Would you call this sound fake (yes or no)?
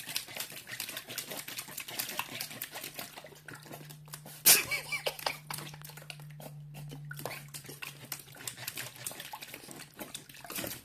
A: no